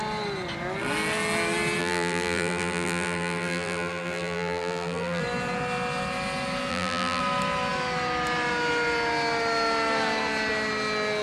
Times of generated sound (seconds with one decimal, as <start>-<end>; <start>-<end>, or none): 1.8-5.2; 6.7-7.2